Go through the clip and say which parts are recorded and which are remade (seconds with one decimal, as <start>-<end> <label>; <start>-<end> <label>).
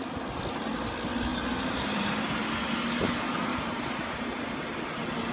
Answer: 0.0-1.3 recorded; 1.3-2.3 remade; 2.3-3.5 recorded; 3.5-4.5 remade; 4.5-5.3 recorded